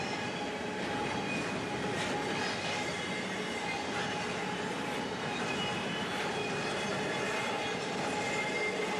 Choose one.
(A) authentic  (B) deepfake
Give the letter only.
A